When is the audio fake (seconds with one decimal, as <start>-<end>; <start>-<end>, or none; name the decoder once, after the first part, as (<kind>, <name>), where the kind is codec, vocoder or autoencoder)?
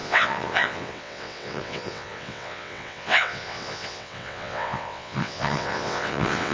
0.0-6.5 (vocoder, WaveNeXt)